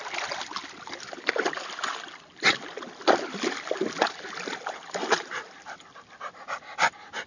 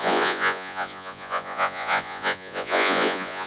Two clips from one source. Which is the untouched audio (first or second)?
first